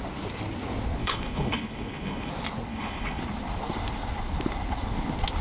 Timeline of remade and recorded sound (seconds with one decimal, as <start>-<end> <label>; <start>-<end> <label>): 0.0-1.0 recorded; 1.0-2.3 remade; 2.3-2.7 recorded; 2.7-3.2 remade; 3.2-5.4 recorded